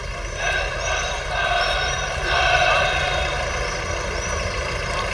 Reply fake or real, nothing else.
fake